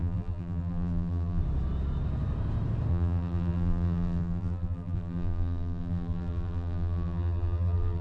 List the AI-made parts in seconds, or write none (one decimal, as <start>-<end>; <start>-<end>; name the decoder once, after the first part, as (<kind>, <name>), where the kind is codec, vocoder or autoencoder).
0.0-1.4 (vocoder, BigVGAN v2); 2.9-8.0